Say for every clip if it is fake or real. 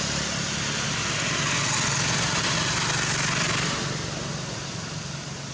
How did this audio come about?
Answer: real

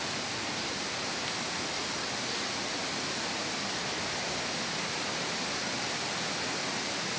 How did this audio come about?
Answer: fake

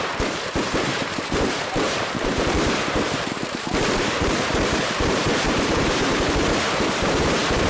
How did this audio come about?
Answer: fake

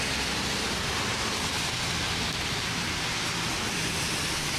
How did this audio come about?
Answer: fake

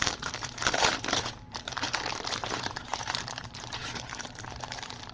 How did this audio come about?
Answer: fake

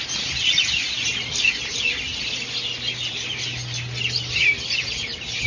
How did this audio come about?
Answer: real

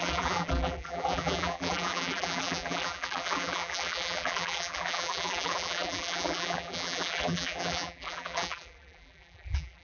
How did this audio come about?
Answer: fake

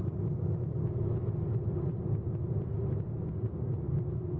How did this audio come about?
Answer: real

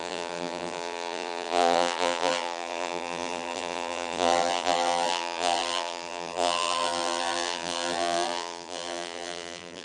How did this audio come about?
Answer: fake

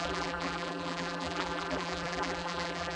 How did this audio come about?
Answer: fake